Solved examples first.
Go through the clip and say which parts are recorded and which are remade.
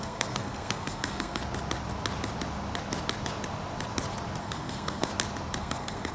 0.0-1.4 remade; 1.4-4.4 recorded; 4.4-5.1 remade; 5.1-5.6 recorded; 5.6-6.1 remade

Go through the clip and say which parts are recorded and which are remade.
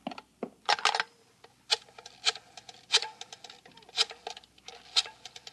0.0-5.5 recorded